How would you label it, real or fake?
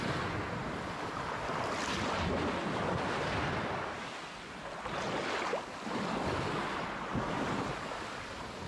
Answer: real